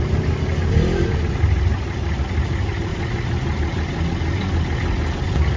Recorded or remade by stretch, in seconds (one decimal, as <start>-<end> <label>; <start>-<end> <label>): 0.0-5.6 recorded